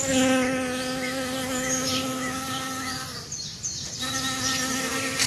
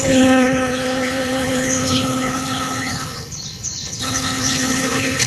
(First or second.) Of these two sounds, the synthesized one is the second